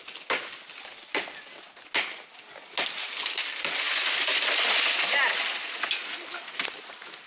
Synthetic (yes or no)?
no